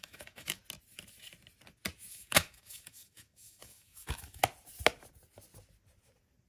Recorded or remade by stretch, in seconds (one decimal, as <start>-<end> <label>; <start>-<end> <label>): 0.0-0.6 remade; 0.6-2.1 recorded; 2.1-4.4 remade; 4.4-6.5 recorded